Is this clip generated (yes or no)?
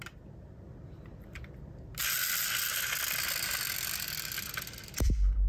no